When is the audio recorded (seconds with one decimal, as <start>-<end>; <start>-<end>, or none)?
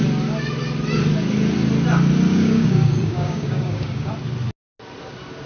0.0-2.3; 4.1-5.5